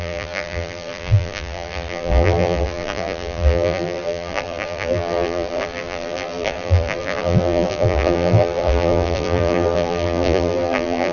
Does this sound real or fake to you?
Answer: fake